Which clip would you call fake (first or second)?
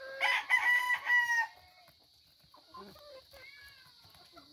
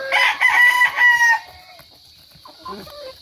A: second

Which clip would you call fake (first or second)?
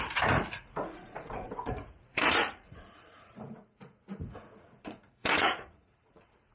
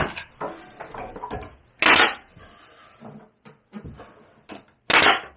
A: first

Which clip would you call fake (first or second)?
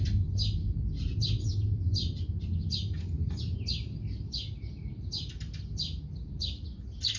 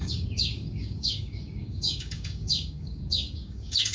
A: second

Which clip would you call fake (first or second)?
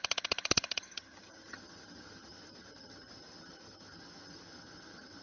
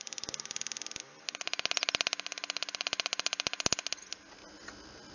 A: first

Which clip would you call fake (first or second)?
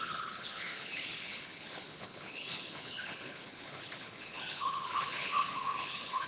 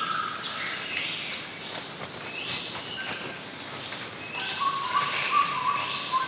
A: first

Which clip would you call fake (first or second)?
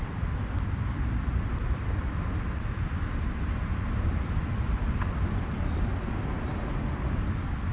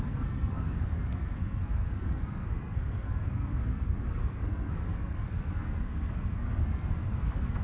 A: second